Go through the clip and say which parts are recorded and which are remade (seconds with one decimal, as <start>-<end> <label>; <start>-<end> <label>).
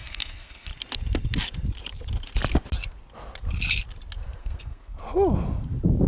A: 0.0-0.7 remade; 0.7-4.4 recorded; 4.4-5.0 remade; 5.0-6.1 recorded